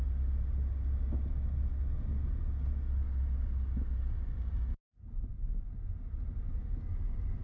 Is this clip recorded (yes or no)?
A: yes